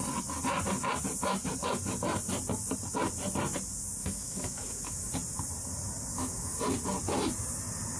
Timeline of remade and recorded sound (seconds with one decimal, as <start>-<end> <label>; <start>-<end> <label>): 0.0-4.0 recorded; 4.0-5.1 remade; 5.1-6.1 recorded; 6.1-6.6 remade; 6.6-8.0 recorded